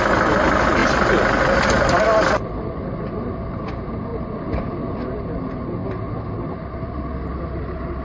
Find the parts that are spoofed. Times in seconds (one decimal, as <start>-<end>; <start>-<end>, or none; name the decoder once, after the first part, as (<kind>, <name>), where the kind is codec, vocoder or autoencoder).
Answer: none